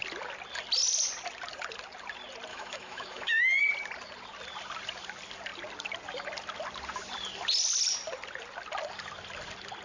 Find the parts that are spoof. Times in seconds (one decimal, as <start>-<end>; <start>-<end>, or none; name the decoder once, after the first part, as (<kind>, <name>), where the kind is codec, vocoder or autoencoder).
2.5-3.4 (autoencoder, DAC-VAE)